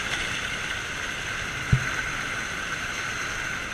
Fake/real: real